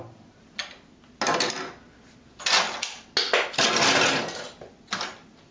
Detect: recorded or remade recorded